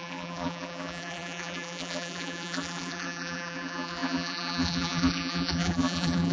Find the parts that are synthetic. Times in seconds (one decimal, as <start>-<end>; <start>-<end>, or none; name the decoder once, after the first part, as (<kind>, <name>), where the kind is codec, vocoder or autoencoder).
0.0-6.3 (vocoder, BigVGAN v2)